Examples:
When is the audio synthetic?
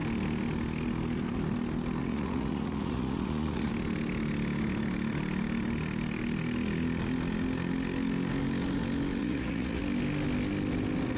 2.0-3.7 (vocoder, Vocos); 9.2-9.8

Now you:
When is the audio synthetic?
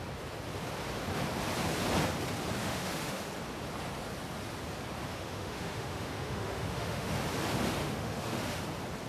2.6-3.2 (autoencoder, DAC-VAE); 5.1-7.1; 7.8-8.6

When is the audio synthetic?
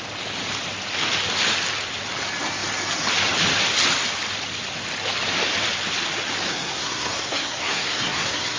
6.5-8.6 (codec, SNAC)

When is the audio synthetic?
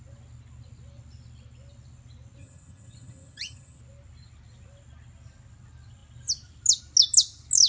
2.4-3.8 (vocoder, HiFi-GAN)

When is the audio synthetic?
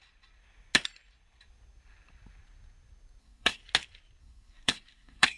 3.2-3.6 (codec, SNAC); 4.2-5.4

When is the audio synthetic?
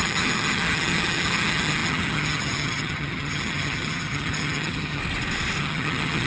0.0-5.0 (vocoder, HiFi-GAN); 5.6-6.3